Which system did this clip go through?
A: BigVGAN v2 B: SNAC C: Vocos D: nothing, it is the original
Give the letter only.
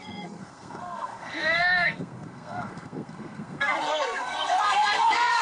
B